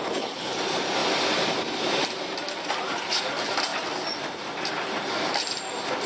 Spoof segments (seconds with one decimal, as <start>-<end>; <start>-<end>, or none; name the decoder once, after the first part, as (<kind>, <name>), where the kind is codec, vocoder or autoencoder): 0.0-0.5 (codec, HILCodec)